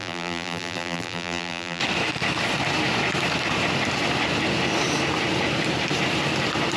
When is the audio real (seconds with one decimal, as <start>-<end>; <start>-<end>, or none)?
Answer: 1.8-6.8